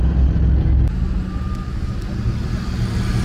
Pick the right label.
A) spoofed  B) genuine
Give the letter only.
B